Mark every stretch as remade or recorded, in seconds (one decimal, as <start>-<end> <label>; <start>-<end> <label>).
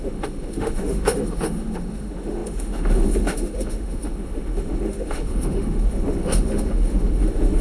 0.0-7.6 remade